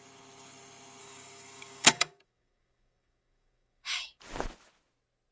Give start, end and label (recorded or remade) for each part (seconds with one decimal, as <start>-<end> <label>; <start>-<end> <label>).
0.0-1.0 recorded; 1.0-4.2 remade; 4.2-5.3 recorded